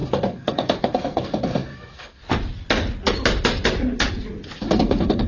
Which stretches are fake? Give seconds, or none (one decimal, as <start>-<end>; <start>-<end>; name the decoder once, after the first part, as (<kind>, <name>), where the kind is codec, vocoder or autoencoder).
0.0-2.2 (codec, SNAC); 4.6-5.3

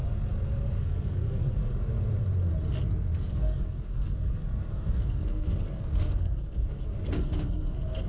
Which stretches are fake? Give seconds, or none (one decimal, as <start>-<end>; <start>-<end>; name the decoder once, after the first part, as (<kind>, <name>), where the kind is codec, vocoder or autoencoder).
0.8-1.6 (codec, SNAC); 3.3-8.1

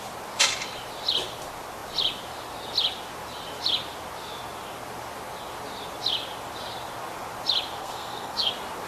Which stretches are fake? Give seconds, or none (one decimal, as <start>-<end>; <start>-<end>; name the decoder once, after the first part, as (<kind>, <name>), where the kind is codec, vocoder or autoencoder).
7.8-8.5 (codec, SNAC)

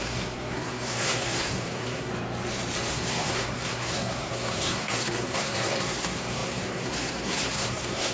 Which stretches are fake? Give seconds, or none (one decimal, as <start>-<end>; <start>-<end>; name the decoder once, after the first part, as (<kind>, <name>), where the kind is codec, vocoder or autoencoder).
0.0-2.1 (codec, SNAC); 2.9-8.1

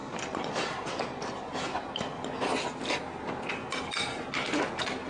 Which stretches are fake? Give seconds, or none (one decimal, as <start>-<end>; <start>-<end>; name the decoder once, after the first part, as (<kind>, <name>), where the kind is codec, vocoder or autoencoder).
none

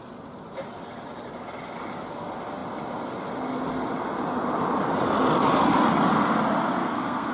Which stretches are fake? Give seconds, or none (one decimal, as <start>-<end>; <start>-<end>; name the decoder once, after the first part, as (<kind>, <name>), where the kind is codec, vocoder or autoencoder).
6.8-7.3 (codec, SNAC)